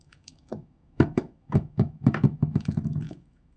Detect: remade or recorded remade